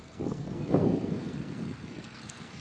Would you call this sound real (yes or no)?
no